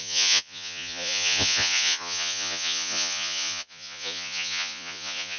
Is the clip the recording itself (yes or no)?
no